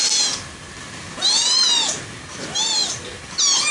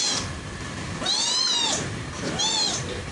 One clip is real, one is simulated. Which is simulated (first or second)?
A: second